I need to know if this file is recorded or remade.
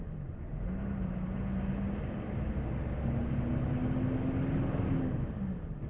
recorded